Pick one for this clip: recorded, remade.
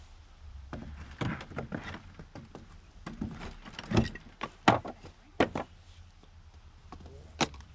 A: recorded